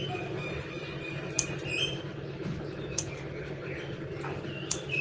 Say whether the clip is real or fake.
real